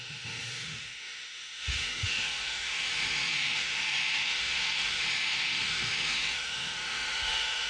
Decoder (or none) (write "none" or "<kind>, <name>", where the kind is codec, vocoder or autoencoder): autoencoder, DAC-VAE